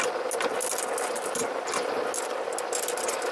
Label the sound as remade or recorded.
recorded